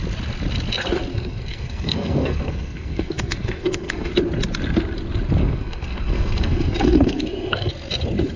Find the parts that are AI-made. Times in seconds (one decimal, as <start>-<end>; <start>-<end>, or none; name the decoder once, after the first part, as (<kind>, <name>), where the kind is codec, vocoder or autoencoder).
1.1-4.1 (codec, SNAC); 5.4-7.7